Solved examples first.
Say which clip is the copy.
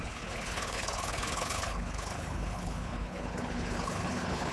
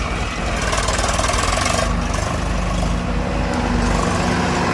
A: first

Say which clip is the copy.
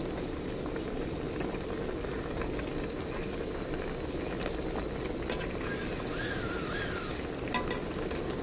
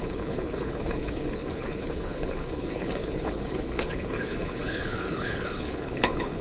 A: second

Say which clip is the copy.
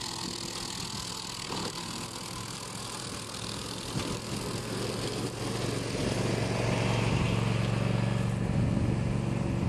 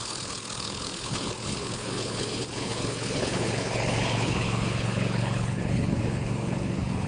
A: second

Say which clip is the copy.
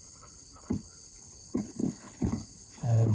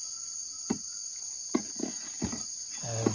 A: first